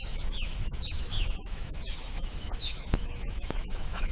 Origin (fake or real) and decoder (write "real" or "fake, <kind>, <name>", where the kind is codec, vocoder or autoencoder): fake, autoencoder, DAC-VAE